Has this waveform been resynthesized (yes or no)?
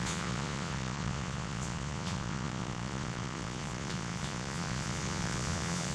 yes